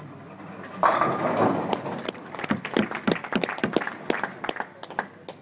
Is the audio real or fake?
real